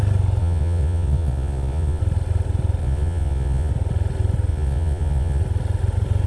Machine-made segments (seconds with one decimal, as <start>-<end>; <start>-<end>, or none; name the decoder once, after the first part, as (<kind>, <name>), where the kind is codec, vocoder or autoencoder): 0.4-2.0 (vocoder, Vocos); 2.8-3.7; 4.5-5.4